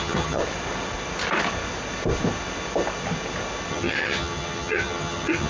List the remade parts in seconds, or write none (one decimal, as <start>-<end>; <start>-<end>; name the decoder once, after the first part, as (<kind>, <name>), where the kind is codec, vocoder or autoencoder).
0.0-0.4 (vocoder, HiFi-GAN); 3.7-5.5